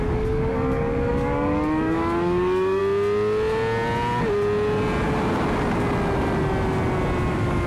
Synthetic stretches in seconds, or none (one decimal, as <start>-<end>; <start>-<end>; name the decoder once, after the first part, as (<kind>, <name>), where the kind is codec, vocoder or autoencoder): 0.0-2.8 (codec, DAC); 7.3-7.7